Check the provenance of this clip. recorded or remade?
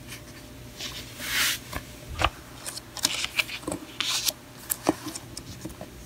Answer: recorded